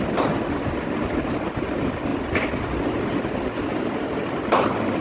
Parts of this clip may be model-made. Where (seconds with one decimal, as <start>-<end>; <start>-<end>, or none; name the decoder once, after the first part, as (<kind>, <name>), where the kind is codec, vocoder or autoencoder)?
none